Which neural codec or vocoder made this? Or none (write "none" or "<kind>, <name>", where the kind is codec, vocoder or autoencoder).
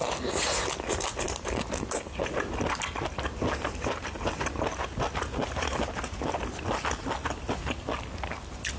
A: none